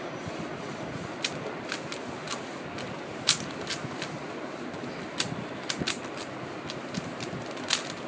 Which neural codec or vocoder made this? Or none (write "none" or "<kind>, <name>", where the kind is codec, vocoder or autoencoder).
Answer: none